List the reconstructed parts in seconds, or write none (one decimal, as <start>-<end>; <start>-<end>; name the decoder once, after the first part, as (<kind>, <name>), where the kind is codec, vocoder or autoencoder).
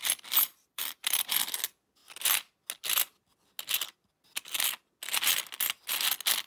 0.5-1.3 (vocoder, BigVGAN v2)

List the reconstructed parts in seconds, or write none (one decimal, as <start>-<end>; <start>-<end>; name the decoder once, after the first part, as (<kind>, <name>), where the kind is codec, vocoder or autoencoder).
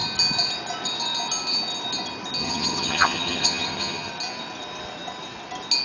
2.4-4.1 (vocoder, HiFi-GAN)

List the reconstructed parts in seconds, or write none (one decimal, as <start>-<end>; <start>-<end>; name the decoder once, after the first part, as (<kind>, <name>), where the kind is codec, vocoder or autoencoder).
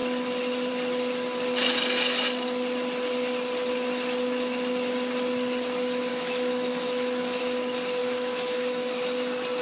6.1-7.4 (autoencoder, DAC-VAE); 8.0-8.9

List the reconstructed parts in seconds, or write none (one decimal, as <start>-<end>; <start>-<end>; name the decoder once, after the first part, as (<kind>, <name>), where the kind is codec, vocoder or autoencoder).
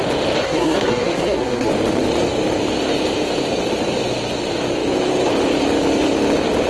0.4-1.7 (codec, SNAC)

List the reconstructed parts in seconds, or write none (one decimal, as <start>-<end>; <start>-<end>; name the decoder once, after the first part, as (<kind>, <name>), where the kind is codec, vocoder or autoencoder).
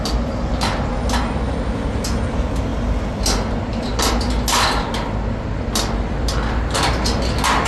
none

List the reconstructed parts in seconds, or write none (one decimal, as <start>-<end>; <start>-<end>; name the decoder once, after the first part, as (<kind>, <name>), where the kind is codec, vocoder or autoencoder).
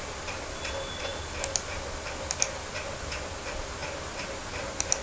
none